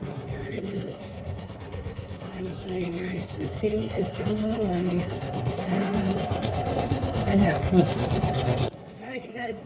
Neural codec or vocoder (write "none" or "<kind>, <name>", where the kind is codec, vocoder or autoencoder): codec, SNAC